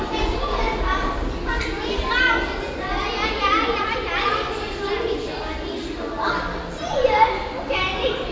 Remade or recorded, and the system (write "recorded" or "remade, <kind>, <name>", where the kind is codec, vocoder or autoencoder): recorded